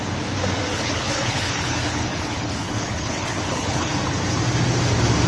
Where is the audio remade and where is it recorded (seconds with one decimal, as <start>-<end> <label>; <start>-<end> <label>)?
0.0-0.7 recorded; 0.7-3.9 remade; 3.9-5.3 recorded